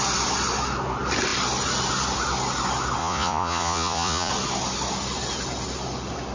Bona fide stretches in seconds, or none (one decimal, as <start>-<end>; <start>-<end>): 0.0-3.0; 4.3-6.3

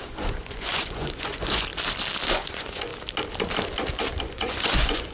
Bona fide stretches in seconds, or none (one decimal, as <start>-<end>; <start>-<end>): 1.7-2.3; 2.9-4.2